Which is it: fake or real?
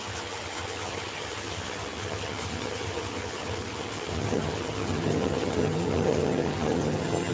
fake